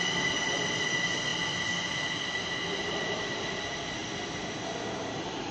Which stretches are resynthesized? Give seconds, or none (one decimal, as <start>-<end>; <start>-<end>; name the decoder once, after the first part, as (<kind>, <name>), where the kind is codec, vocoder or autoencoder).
0.0-1.3 (vocoder, BigVGAN v2); 2.8-4.0; 5.1-5.5